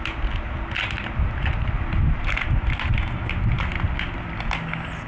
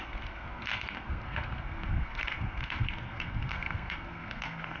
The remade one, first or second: second